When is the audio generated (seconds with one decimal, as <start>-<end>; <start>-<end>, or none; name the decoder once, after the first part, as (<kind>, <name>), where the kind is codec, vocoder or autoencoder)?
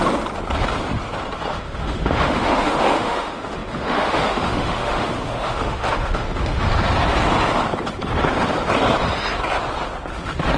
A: 1.5-6.7 (autoencoder, DAC-VAE)